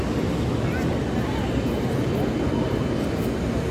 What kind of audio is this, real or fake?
real